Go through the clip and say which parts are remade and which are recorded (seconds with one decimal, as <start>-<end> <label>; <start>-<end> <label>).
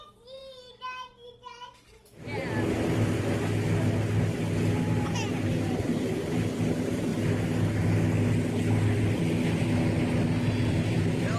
0.0-0.4 remade; 0.4-5.3 recorded; 5.3-7.1 remade; 7.1-10.7 recorded; 10.7-11.4 remade